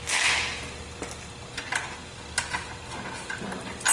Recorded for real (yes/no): yes